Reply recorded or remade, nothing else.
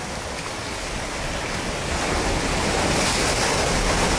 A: recorded